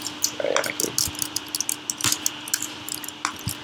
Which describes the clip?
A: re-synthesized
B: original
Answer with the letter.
B